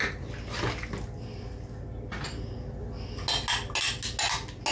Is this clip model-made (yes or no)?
no